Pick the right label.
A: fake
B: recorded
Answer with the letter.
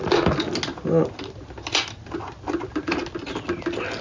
B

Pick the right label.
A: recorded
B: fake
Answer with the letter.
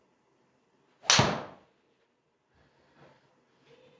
A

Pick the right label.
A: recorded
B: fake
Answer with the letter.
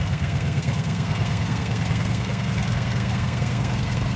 B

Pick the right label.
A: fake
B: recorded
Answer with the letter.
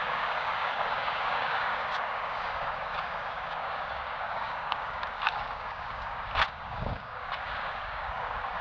A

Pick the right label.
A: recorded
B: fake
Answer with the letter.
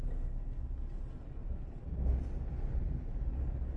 A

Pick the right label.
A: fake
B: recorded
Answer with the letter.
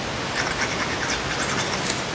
B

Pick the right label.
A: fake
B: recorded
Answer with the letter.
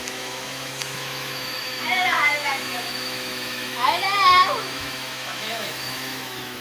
A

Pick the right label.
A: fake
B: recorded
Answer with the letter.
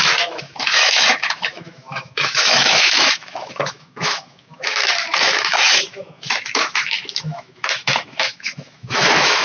A